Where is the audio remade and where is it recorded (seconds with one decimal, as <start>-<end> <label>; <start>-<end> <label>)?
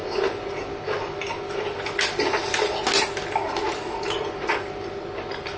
0.0-5.6 recorded